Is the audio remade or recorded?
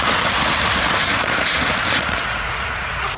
remade